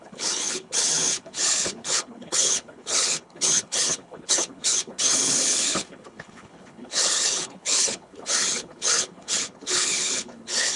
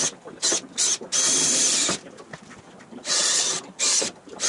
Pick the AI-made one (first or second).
first